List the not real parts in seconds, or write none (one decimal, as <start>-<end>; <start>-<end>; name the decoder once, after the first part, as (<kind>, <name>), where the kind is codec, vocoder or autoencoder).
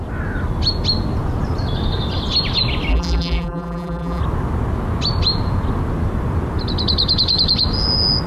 2.9-4.2 (vocoder, BigVGAN v2)